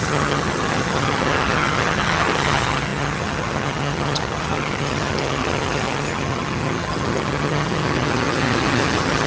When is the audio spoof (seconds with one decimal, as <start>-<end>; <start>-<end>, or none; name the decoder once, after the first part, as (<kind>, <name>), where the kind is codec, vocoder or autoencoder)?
0.0-9.3 (vocoder, HiFi-GAN)